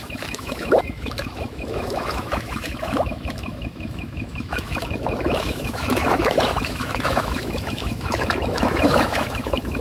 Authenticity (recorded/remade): remade